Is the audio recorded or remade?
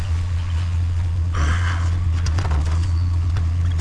remade